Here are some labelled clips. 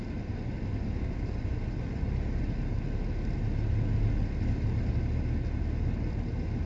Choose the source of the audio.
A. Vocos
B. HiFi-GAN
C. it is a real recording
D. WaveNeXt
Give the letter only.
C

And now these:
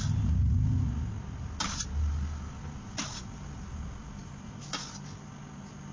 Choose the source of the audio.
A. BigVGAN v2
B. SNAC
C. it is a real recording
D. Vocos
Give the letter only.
C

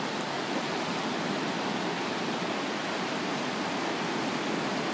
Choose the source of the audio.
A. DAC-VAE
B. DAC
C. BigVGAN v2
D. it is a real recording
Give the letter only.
D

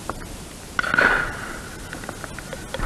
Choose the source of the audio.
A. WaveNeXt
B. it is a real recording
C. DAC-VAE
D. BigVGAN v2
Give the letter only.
B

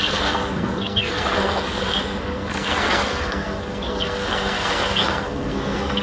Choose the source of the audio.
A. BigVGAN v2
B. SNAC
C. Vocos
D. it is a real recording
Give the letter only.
B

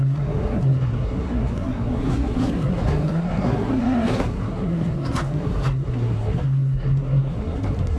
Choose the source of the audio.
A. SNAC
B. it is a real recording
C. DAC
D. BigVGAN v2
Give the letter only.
A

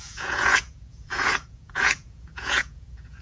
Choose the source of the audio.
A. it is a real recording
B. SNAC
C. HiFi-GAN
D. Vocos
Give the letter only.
D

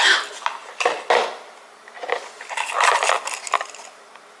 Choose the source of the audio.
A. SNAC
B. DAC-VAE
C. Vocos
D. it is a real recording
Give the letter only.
D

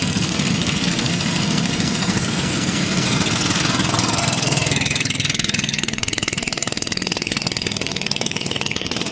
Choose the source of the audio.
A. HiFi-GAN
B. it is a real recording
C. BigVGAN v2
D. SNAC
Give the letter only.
D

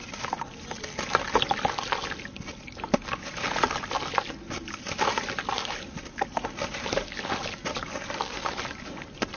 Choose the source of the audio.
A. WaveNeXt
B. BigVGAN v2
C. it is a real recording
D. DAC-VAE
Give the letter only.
C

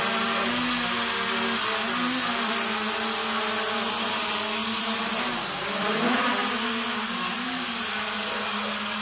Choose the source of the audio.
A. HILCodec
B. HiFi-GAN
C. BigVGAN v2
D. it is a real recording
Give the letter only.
C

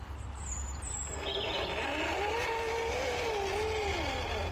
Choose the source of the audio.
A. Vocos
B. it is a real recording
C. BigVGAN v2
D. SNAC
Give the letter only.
B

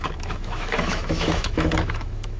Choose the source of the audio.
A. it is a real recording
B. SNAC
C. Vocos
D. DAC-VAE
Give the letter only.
D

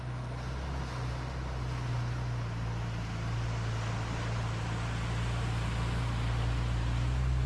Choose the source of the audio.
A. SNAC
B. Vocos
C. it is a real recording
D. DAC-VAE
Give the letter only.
C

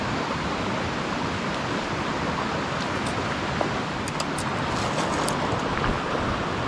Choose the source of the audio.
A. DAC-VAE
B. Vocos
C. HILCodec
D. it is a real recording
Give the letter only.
D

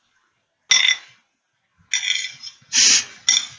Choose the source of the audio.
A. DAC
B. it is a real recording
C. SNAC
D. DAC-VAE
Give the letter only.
B